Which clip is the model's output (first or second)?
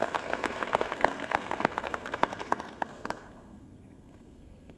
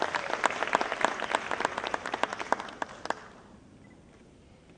first